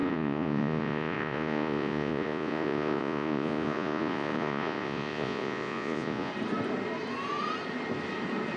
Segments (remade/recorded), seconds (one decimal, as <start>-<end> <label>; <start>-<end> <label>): 0.0-6.3 remade; 6.3-8.6 recorded